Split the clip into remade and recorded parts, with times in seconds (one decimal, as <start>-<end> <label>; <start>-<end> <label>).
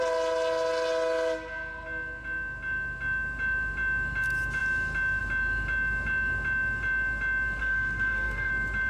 0.0-7.6 recorded; 7.6-8.5 remade; 8.5-8.9 recorded